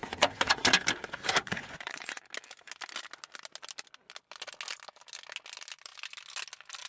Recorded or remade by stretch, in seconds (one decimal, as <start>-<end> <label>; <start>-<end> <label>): 0.0-0.7 remade; 0.7-1.4 recorded; 1.4-2.2 remade; 2.2-6.9 recorded